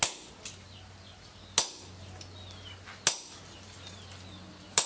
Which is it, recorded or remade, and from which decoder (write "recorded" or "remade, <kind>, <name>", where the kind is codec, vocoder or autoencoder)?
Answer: recorded